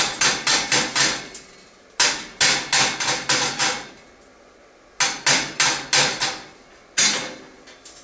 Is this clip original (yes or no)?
yes